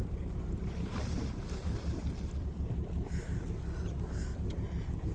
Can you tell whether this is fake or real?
real